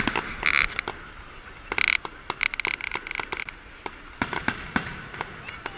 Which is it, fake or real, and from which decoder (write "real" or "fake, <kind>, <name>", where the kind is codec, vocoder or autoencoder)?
real